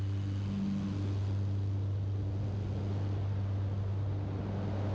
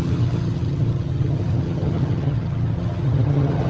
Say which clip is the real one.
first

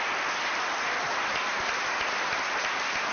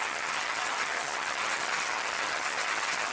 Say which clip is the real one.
first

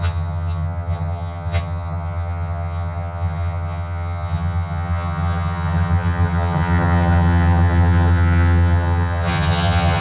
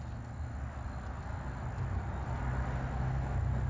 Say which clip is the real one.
second